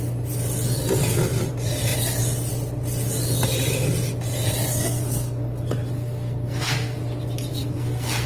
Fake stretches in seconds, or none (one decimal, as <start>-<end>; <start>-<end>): 4.7-7.0; 7.5-8.3